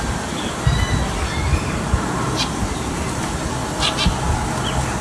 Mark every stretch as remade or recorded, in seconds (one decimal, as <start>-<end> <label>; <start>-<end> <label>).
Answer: 0.0-1.5 recorded; 1.5-4.1 remade; 4.1-5.0 recorded